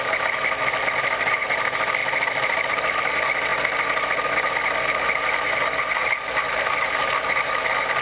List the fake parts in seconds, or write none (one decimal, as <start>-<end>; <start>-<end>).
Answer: none